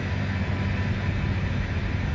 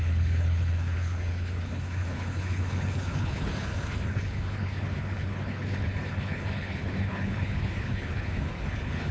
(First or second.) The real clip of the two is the first